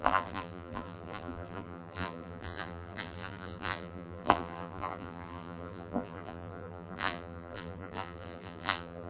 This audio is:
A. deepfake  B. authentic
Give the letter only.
A